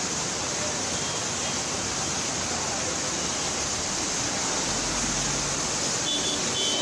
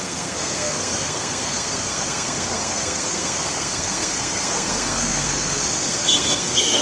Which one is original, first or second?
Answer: first